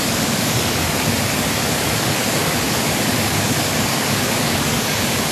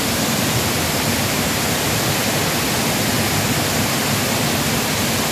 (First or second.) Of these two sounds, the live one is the second